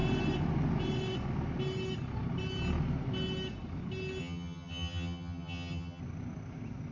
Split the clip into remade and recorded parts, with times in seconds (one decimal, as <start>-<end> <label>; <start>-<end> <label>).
0.0-4.2 recorded; 4.2-6.0 remade; 6.0-6.9 recorded